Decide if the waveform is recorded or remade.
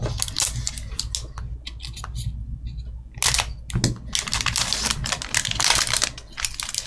recorded